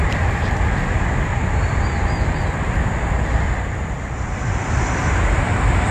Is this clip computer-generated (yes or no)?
yes